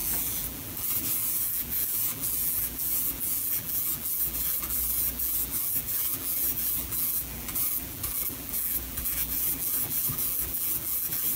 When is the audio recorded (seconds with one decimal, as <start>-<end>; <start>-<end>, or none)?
none